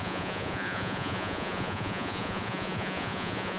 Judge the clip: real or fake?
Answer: fake